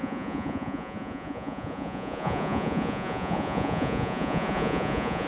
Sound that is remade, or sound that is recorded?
remade